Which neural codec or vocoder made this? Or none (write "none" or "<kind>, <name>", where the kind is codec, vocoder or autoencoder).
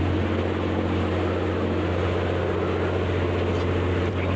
none